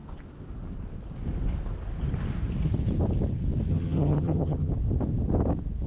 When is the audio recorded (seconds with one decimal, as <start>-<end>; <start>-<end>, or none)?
0.0-3.7; 4.7-5.9